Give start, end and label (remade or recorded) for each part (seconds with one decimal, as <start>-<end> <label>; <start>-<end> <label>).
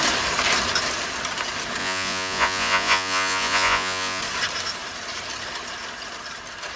0.0-1.8 recorded; 1.8-4.2 remade; 4.2-6.8 recorded